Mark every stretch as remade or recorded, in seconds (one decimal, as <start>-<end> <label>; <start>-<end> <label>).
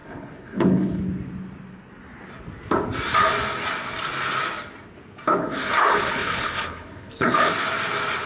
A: 0.0-1.0 remade; 1.0-5.4 recorded; 5.4-7.5 remade; 7.5-8.3 recorded